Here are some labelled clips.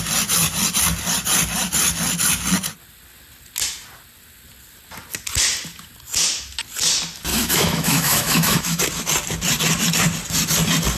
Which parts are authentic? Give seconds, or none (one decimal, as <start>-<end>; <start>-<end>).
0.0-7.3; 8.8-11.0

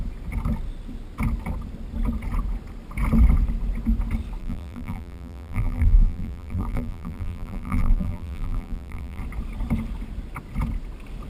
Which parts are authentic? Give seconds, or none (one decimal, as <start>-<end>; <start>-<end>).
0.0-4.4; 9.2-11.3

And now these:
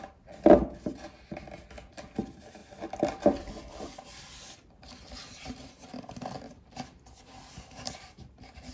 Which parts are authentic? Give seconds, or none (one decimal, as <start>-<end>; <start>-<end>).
0.0-8.7

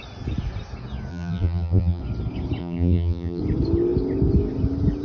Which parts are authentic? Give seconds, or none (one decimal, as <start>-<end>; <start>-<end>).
0.0-1.1; 2.0-2.6; 3.4-5.0